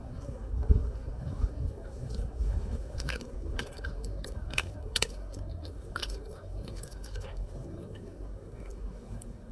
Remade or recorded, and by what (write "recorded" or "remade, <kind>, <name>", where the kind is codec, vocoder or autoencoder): remade, codec, SNAC